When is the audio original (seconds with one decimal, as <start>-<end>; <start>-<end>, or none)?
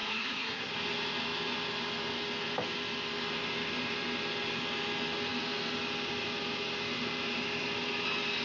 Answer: 0.7-8.4